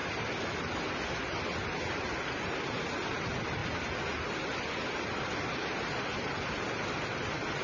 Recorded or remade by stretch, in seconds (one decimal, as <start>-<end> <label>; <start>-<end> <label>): 0.0-7.6 recorded